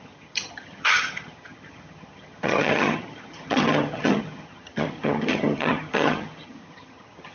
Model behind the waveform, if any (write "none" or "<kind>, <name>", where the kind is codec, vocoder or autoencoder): vocoder, HiFi-GAN